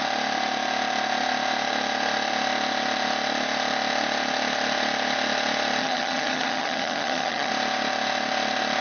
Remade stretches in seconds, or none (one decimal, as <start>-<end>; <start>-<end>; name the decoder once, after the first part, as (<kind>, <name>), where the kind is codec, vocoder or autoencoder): 5.8-7.5 (vocoder, HiFi-GAN)